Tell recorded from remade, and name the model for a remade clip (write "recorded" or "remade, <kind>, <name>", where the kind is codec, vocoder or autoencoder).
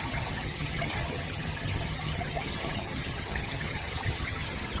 remade, vocoder, HiFi-GAN